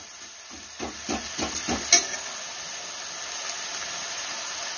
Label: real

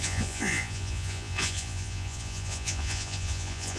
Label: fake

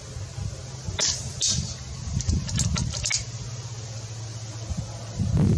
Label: real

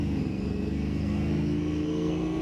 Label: fake